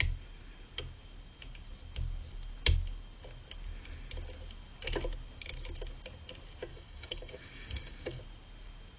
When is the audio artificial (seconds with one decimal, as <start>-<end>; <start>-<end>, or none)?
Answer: 6.7-8.2